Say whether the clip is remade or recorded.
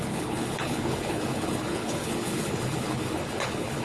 remade